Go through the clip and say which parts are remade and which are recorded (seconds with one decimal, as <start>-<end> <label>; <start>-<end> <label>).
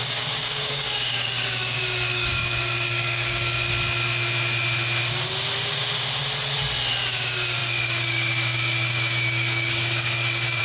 0.0-3.7 remade; 3.7-7.1 recorded; 7.1-10.6 remade